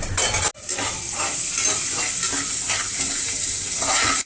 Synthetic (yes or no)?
no